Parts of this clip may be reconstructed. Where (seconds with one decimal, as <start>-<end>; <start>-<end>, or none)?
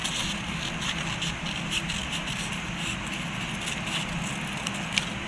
none